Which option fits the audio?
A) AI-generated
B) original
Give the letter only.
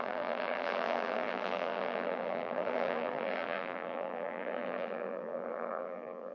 A